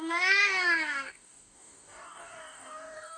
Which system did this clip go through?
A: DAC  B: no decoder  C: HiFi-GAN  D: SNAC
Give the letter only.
A